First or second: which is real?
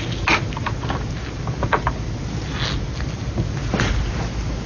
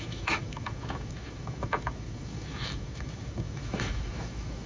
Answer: first